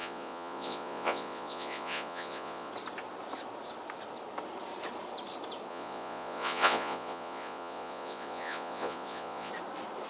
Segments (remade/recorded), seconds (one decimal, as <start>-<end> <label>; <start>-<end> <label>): 0.0-2.7 remade; 2.7-5.7 recorded; 5.7-9.5 remade; 9.5-10.1 recorded